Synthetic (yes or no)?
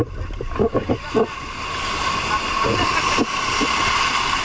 no